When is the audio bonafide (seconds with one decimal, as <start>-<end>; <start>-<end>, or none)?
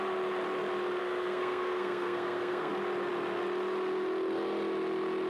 0.0-1.0; 2.7-5.3